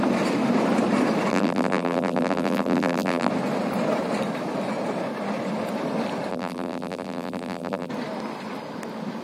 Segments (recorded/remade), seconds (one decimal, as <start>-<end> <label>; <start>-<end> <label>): 0.0-1.3 recorded; 1.3-3.3 remade; 3.3-6.3 recorded; 6.3-7.9 remade; 7.9-9.2 recorded